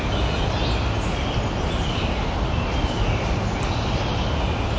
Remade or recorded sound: recorded